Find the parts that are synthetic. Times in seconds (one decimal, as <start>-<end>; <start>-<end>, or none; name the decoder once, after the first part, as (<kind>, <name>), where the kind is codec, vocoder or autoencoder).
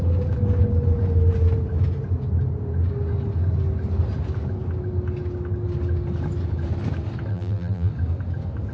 7.3-7.9 (vocoder, BigVGAN v2)